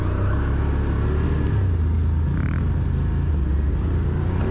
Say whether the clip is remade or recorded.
recorded